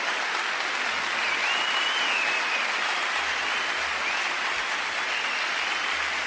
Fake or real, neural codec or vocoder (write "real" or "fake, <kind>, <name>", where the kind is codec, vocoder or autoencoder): real